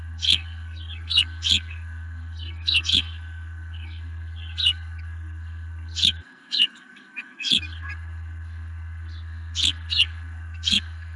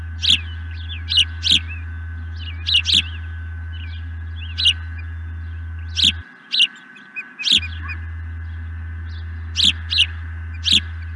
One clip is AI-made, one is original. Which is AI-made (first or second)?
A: first